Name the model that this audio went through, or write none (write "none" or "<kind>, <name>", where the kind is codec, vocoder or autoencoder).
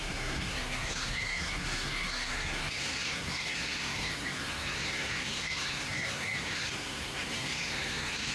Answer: codec, SNAC